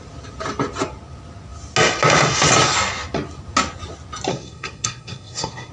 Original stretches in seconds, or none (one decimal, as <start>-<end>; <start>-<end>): 0.0-4.3